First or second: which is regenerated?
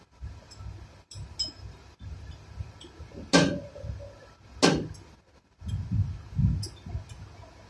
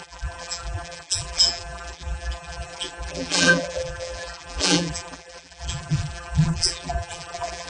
second